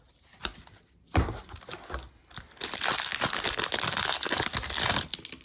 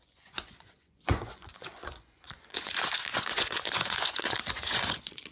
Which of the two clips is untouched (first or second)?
first